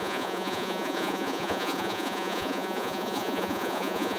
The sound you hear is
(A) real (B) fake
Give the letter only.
B